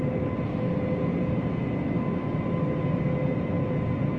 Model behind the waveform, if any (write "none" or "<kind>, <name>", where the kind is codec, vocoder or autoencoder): none